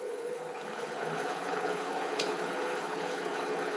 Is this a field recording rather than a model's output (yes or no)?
no